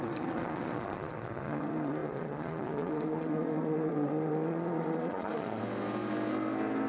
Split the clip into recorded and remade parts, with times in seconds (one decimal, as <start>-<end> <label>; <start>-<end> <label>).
0.0-5.6 remade; 5.6-6.9 recorded